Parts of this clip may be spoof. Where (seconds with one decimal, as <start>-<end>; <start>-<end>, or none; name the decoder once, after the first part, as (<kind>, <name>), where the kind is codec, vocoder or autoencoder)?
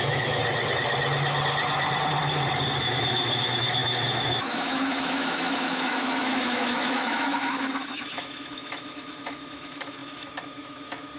0.0-0.4 (autoencoder, DAC-VAE); 2.8-11.2